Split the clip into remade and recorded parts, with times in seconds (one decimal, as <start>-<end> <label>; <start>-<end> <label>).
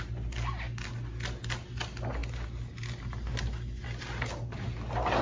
0.0-5.2 recorded